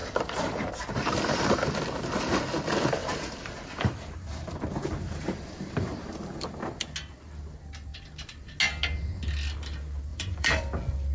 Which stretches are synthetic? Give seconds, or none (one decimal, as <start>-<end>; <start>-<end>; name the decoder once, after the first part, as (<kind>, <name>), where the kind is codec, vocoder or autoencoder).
0.0-0.7 (vocoder, BigVGAN v2); 3.0-6.5; 7.9-8.5; 10.1-10.6